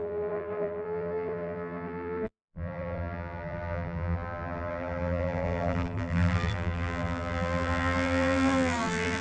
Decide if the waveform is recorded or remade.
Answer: remade